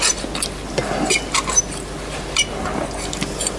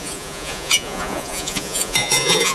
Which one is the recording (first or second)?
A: first